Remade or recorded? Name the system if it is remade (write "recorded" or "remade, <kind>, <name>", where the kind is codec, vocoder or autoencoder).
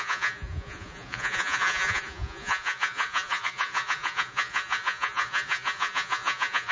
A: remade, vocoder, Vocos